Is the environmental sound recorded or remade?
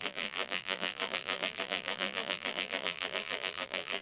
remade